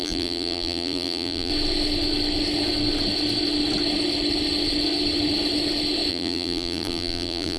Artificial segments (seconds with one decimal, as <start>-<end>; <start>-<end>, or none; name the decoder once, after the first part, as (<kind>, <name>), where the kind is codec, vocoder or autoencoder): 0.0-1.5 (vocoder, BigVGAN v2); 6.1-7.6